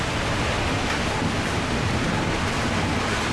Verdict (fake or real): real